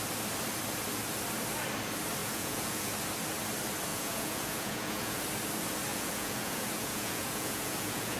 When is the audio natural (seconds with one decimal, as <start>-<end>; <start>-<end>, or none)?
0.0-2.2; 2.9-3.9; 5.2-5.9